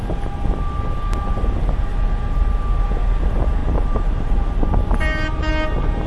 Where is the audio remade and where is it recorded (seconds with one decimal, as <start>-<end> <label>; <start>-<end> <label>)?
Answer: 0.0-1.9 recorded; 1.9-2.5 remade; 2.5-3.6 recorded; 3.6-5.5 remade; 5.5-6.1 recorded